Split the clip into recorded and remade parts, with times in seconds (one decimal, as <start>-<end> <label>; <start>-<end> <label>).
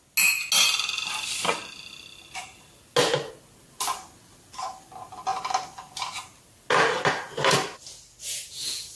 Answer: 0.0-8.2 recorded; 8.2-9.0 remade